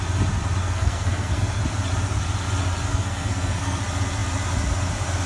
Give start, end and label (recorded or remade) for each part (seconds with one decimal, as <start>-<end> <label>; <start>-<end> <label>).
0.0-0.6 recorded; 0.6-1.6 remade; 1.6-2.9 recorded; 2.9-3.8 remade; 3.8-5.3 recorded